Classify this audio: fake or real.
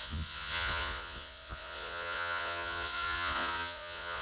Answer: fake